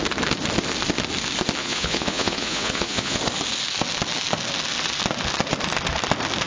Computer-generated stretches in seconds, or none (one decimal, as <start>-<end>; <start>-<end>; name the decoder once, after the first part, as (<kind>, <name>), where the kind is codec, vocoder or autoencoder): 1.6-3.2 (vocoder, Vocos)